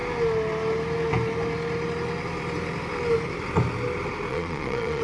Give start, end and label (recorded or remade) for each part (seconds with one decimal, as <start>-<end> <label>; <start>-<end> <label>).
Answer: 0.0-4.3 recorded; 4.3-5.0 remade